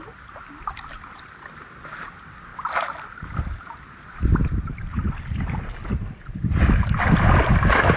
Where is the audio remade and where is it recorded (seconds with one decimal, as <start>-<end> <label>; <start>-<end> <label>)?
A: 0.0-2.5 recorded; 2.5-7.0 remade; 7.0-8.0 recorded

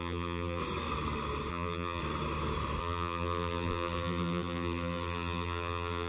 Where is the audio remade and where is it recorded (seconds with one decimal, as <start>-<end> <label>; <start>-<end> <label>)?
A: 0.0-0.6 remade; 0.6-1.5 recorded; 1.5-2.0 remade; 2.0-2.8 recorded; 2.8-6.1 remade